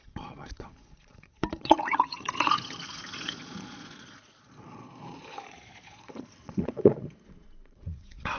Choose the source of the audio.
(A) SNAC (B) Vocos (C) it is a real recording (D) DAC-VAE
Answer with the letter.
B